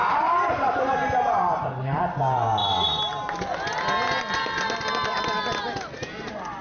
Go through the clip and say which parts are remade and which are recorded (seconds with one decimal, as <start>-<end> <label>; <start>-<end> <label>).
0.0-6.6 recorded